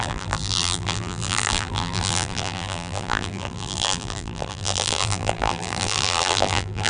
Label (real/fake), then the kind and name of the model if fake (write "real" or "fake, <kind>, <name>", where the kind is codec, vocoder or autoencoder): fake, vocoder, BigVGAN v2